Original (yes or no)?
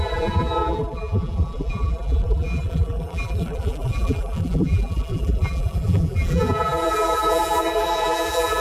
no